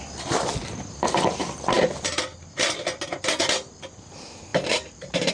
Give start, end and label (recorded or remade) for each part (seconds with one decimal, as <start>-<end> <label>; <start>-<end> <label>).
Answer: 0.0-1.4 recorded; 1.4-2.2 remade; 2.2-4.5 recorded; 4.5-5.3 remade